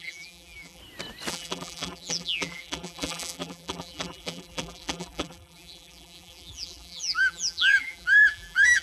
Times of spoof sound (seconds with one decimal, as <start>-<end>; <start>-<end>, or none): 0.0-0.8; 1.3-8.8